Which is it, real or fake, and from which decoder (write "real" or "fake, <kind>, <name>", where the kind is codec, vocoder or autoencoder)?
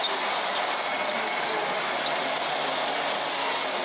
real